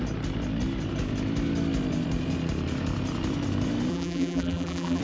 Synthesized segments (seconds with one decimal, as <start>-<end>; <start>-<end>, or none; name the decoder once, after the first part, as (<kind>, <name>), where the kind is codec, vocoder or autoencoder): 3.9-5.0 (vocoder, BigVGAN v2)